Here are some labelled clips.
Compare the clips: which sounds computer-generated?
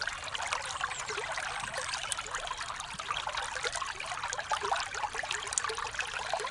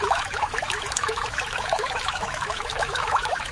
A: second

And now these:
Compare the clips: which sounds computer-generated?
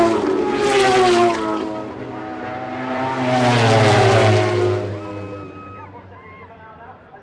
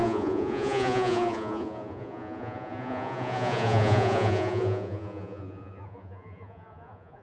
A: second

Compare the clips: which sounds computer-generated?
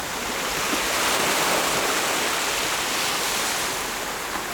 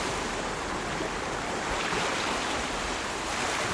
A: second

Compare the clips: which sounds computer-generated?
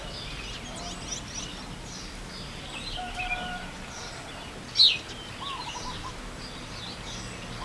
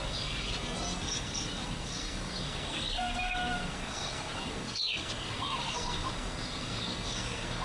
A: second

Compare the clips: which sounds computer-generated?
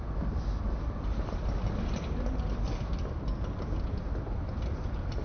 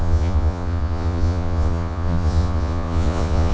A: second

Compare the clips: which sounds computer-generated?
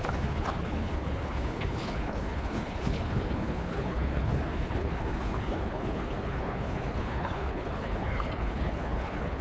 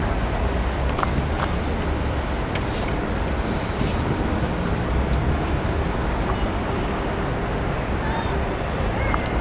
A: first